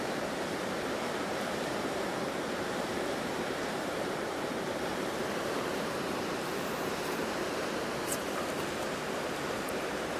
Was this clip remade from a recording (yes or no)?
yes